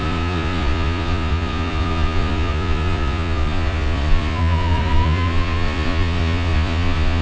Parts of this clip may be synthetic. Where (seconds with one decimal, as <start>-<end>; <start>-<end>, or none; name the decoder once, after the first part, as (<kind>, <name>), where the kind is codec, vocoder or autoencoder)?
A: 0.0-7.2 (vocoder, Vocos)